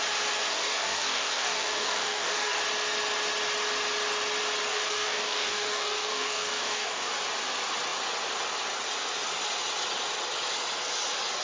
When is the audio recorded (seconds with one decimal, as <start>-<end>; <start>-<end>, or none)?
0.0-0.5; 2.6-4.7; 7.1-11.4